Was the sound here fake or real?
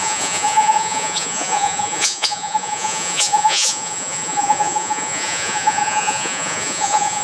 fake